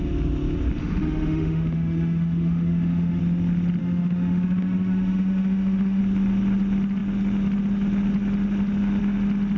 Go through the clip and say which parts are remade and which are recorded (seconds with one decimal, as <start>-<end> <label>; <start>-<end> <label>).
0.0-0.8 recorded; 0.8-3.2 remade; 3.2-3.8 recorded; 3.8-6.0 remade; 6.0-9.6 recorded